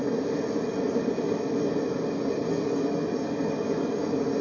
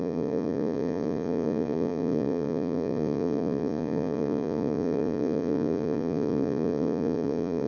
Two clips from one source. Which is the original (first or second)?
first